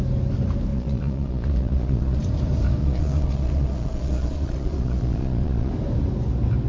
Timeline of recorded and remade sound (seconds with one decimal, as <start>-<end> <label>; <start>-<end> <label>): 0.0-0.7 recorded; 0.7-2.2 remade; 2.2-2.8 recorded; 2.8-5.7 remade; 5.7-6.7 recorded